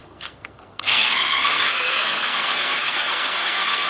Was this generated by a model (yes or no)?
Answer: yes